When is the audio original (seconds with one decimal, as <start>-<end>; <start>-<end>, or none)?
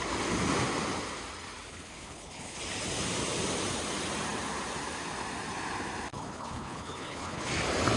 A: 0.0-1.7; 2.6-6.1; 7.5-8.0